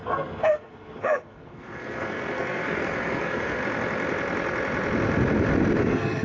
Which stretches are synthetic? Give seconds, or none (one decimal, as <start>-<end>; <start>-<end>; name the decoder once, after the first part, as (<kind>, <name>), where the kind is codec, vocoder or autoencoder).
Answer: 0.0-3.6 (codec, SNAC); 5.8-6.2